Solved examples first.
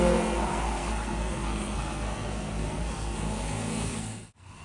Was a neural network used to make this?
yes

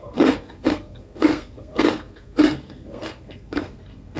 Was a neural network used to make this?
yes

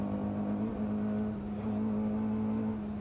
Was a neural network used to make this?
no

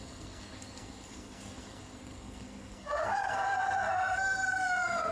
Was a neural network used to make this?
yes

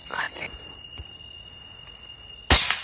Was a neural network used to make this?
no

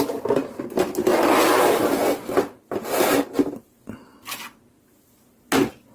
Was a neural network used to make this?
no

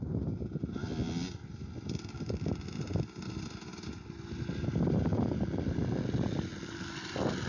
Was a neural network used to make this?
no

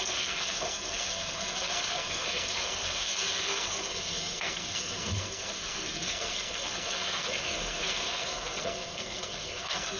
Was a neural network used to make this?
yes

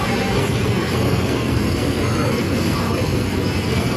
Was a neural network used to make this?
yes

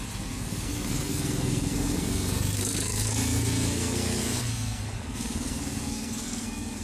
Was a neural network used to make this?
yes